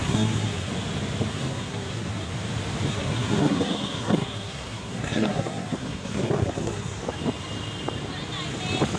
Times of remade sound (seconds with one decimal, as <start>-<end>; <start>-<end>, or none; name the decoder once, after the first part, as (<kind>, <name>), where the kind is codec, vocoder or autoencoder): 0.0-0.7 (codec, SNAC); 1.3-2.3; 2.9-7.0